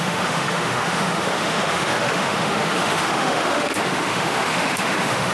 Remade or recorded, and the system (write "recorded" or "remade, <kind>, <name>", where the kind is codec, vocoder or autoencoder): remade, autoencoder, DAC-VAE